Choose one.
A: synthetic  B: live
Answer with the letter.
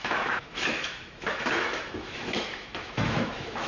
A